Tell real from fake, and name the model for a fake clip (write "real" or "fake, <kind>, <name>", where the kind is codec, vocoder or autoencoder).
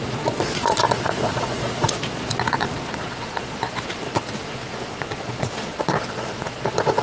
fake, vocoder, Vocos